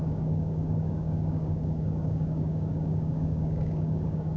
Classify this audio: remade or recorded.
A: remade